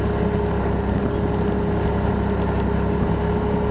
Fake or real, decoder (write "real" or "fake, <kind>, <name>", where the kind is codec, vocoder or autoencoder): real